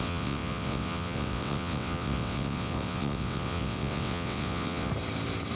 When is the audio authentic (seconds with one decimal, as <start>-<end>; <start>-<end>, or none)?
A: 4.9-5.6